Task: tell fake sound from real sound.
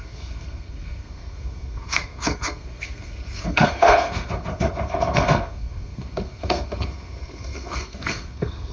fake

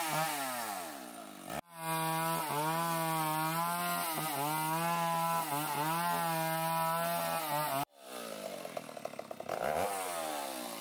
real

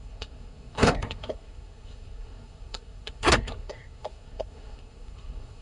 fake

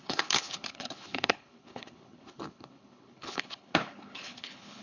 fake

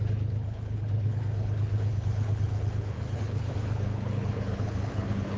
fake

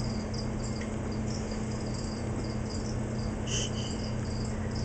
real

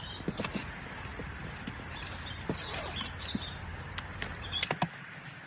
real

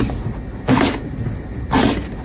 real